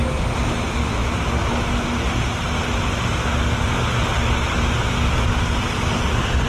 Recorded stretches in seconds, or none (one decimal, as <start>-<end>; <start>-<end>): 0.0-6.5

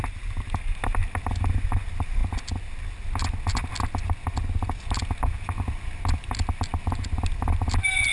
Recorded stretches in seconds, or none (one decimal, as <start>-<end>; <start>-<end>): 0.0-8.1

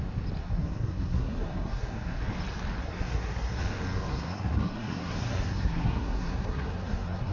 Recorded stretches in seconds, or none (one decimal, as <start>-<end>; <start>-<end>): 0.0-0.4; 2.2-2.8; 3.6-4.1

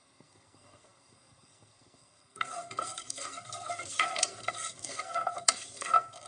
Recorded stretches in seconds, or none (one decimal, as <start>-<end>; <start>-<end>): none

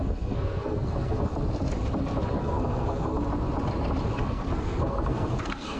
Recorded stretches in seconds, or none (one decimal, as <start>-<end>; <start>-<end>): 1.3-2.4; 3.1-4.2